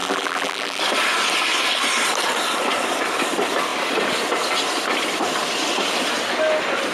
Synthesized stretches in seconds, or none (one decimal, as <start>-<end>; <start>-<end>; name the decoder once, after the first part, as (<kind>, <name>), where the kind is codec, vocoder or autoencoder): 0.0-0.8 (vocoder, BigVGAN v2)